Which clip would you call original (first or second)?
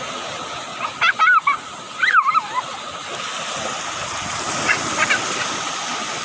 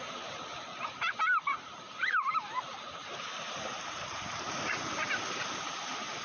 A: first